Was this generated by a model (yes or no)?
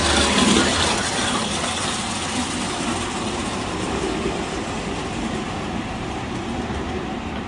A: no